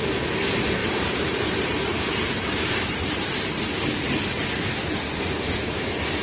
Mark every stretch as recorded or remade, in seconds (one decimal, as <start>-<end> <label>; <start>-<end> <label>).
0.0-0.8 recorded; 0.8-4.5 remade; 4.5-6.2 recorded